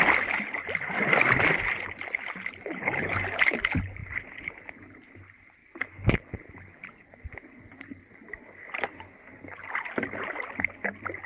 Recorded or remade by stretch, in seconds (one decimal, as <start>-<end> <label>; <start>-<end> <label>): 0.0-11.3 recorded